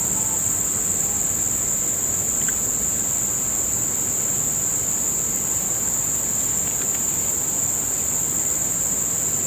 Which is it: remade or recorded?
recorded